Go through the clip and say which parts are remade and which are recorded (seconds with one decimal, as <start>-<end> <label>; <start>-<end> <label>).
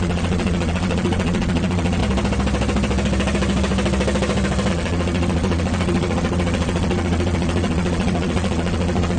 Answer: 0.0-2.0 remade; 2.0-4.7 recorded; 4.7-9.2 remade